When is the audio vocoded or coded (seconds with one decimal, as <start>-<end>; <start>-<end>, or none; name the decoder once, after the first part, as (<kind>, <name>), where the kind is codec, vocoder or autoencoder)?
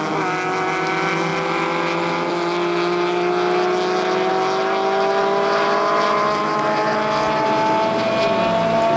none